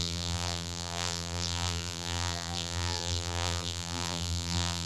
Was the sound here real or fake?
fake